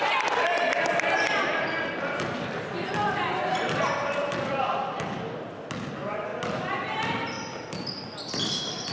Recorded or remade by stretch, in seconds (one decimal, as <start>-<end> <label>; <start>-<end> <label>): 0.0-8.9 recorded